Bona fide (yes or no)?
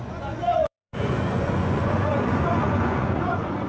no